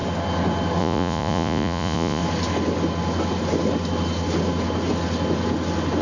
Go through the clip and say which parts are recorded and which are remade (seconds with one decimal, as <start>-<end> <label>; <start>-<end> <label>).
0.0-0.8 recorded; 0.8-2.2 remade; 2.2-6.0 recorded